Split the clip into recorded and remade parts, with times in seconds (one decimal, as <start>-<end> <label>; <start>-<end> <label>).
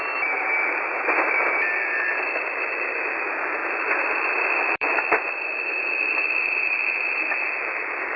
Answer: 0.0-8.2 remade